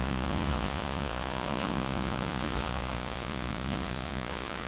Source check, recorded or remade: remade